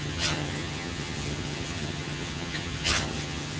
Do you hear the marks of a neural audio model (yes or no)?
yes